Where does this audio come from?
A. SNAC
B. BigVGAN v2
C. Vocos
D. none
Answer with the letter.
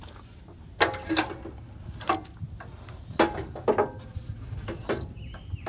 D